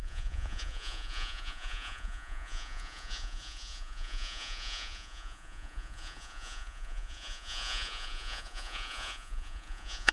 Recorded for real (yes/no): no